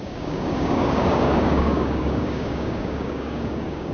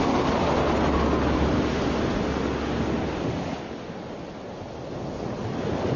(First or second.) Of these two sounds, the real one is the second